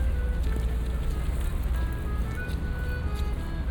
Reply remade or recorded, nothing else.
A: recorded